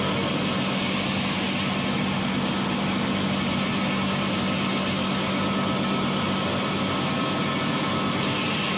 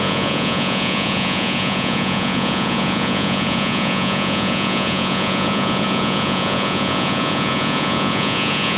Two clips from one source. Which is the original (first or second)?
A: first